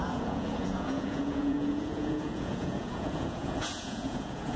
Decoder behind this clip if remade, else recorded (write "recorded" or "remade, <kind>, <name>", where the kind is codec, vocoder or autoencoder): remade, vocoder, Vocos